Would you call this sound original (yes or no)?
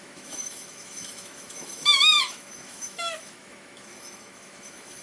no